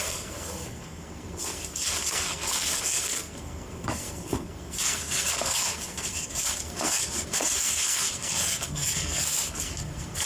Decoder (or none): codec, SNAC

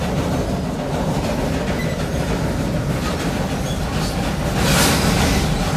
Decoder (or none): none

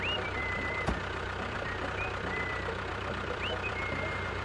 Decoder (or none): vocoder, BigVGAN v2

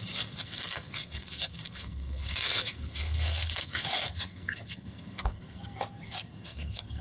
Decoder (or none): codec, SNAC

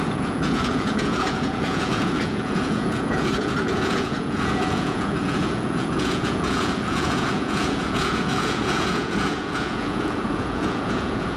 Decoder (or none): vocoder, Vocos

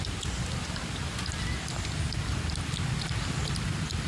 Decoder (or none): none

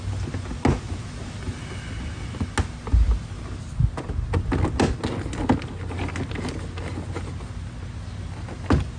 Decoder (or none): none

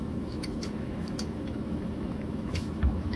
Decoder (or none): autoencoder, DAC-VAE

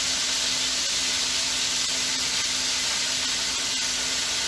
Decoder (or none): none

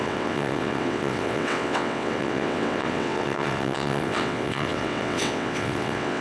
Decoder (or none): vocoder, WaveNeXt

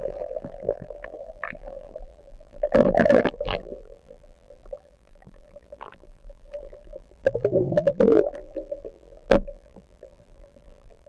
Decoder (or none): vocoder, BigVGAN v2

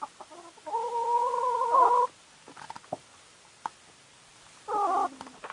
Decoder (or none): none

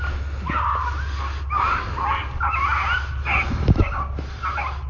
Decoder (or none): none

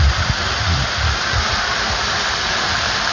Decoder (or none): none